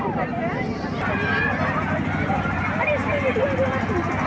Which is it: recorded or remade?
recorded